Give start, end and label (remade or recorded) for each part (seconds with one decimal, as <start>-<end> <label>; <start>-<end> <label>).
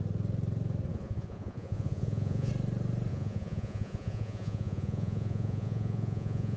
0.0-0.9 recorded; 0.9-2.5 remade; 2.5-3.1 recorded; 3.1-6.6 remade